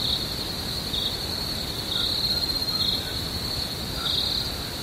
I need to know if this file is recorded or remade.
recorded